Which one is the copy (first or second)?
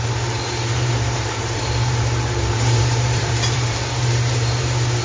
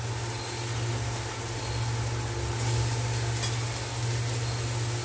first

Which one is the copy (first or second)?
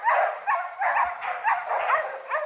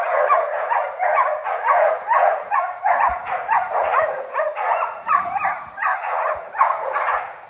second